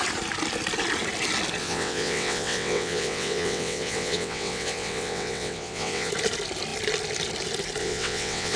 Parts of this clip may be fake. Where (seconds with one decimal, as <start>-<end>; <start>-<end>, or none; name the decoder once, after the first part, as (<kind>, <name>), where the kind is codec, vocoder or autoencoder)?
1.6-6.1 (vocoder, WaveNeXt); 7.8-8.6